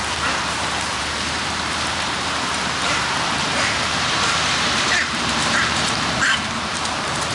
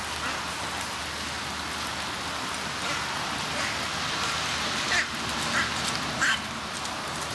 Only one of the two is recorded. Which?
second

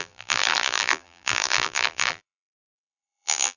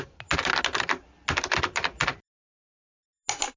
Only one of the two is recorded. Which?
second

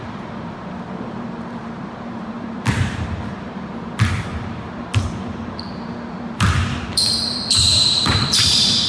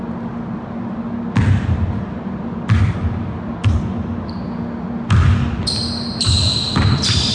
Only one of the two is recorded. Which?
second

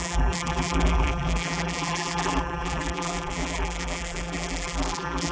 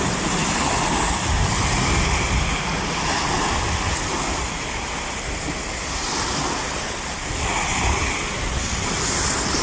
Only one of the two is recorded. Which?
second